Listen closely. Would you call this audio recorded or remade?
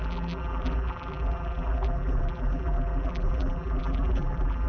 remade